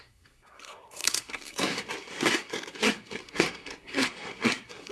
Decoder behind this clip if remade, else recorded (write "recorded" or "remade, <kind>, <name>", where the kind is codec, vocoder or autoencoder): remade, codec, SNAC